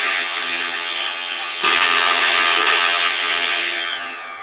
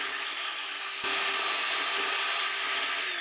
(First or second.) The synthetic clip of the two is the first